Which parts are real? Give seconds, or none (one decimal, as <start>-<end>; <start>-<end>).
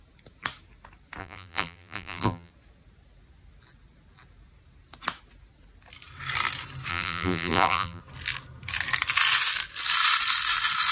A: 0.0-1.2; 2.5-6.9; 8.0-10.9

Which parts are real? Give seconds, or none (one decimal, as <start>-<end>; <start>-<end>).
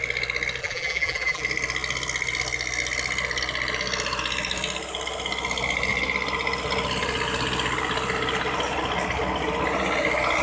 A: 0.0-0.6; 1.4-10.4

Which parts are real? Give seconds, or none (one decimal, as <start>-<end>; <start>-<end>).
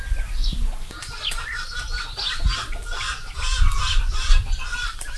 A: 0.4-3.4